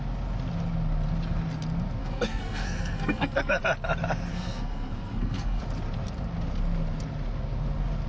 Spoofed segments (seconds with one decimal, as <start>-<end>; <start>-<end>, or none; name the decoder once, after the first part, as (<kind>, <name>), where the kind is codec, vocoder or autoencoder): 2.0-3.6 (codec, SNAC); 4.3-5.6